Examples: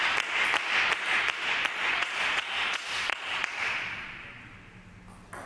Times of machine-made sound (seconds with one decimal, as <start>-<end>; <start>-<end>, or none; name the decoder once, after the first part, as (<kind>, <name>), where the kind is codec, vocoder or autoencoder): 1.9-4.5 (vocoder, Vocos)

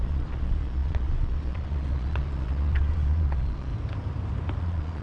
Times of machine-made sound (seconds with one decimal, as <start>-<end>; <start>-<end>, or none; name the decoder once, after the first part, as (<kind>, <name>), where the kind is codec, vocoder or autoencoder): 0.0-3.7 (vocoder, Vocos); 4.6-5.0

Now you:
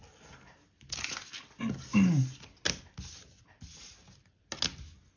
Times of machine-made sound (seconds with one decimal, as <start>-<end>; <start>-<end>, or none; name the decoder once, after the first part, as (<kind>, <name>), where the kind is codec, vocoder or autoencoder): none